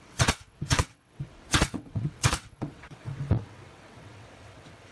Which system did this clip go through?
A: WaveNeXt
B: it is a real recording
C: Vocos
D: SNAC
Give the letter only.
A